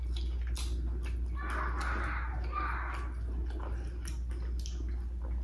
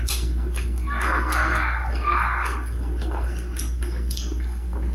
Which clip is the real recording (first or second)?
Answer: first